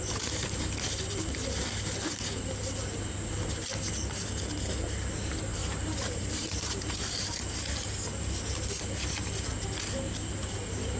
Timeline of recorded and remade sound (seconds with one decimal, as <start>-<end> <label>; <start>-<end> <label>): 0.0-5.6 recorded; 5.6-7.5 remade; 7.5-11.0 recorded